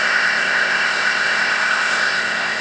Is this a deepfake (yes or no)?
yes